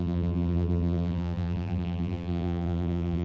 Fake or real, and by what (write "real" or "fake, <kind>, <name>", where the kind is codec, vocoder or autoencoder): fake, vocoder, BigVGAN v2